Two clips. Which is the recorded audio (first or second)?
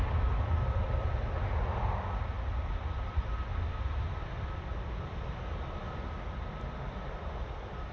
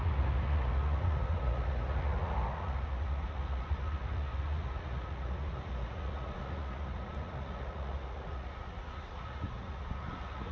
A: first